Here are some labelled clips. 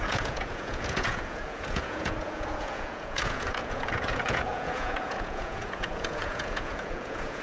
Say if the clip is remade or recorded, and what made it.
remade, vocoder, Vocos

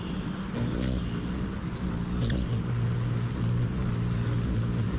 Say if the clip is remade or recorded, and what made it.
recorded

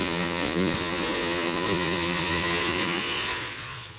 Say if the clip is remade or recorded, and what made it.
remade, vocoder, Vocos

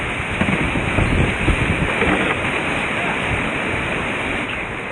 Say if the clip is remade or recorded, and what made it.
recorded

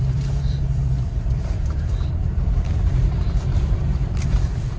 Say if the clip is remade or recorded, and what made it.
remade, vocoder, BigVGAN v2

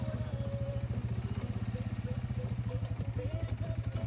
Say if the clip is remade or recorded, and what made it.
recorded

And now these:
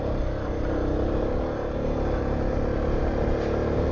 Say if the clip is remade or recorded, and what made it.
recorded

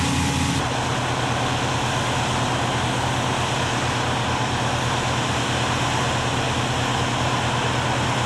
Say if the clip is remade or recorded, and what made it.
recorded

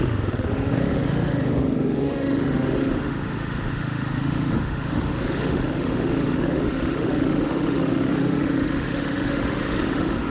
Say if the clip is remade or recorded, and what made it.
remade, autoencoder, DAC-VAE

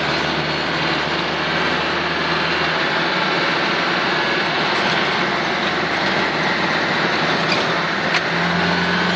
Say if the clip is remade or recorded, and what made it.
recorded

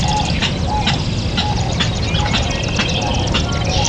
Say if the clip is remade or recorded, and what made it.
recorded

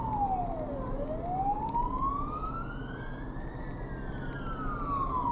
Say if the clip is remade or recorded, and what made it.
recorded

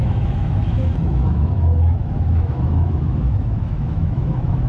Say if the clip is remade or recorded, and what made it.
remade, autoencoder, DAC-VAE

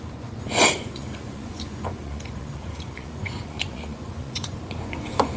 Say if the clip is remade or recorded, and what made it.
remade, vocoder, Vocos